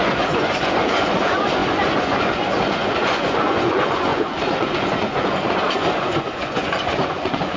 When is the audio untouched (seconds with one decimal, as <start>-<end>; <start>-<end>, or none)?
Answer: none